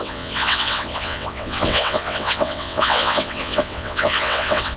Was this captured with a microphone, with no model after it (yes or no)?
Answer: no